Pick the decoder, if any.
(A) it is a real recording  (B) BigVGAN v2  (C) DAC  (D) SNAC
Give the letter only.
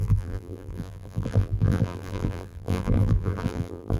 B